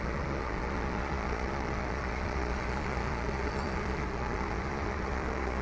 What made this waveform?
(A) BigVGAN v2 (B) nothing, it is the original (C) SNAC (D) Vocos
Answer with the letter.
D